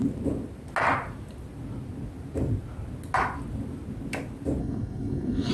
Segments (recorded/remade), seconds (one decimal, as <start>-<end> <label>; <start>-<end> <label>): 0.0-4.6 recorded; 4.6-5.5 remade